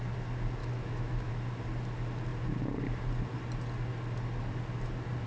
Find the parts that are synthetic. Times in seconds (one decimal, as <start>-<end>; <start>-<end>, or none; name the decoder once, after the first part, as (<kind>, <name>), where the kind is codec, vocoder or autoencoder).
0.6-1.3 (autoencoder, DAC-VAE)

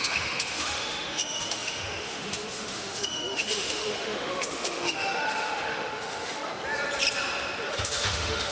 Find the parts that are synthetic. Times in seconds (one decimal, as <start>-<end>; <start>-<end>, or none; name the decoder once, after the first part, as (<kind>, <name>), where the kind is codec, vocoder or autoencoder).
0.0-6.5 (autoencoder, DAC-VAE); 7.7-8.5

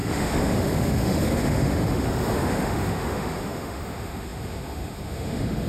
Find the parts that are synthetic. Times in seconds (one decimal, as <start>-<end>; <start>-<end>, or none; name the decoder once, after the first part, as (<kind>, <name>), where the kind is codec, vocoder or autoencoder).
0.0-5.7 (autoencoder, DAC-VAE)

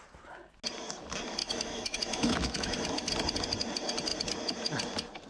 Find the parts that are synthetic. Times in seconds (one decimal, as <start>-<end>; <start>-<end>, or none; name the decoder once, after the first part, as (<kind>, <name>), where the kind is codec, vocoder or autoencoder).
1.4-3.1 (autoencoder, DAC-VAE)

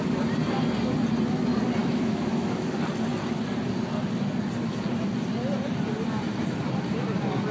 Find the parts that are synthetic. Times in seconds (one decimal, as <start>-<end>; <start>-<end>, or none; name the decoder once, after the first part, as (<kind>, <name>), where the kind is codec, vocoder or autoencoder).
1.8-2.7 (autoencoder, DAC-VAE)